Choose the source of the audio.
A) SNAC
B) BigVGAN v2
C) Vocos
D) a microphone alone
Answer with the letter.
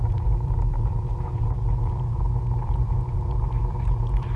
B